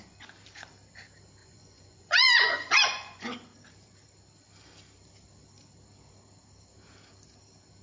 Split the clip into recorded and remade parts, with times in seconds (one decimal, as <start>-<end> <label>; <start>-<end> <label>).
0.0-1.4 recorded; 1.4-3.3 remade; 3.3-7.8 recorded